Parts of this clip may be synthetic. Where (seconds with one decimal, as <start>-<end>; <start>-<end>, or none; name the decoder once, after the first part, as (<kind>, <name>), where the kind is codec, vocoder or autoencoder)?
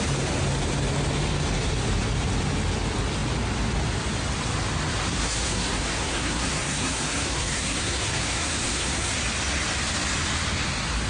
5.1-9.1 (codec, SNAC)